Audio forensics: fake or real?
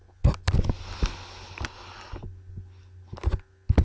real